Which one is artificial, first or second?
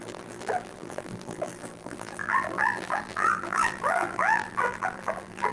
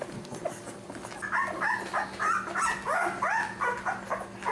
first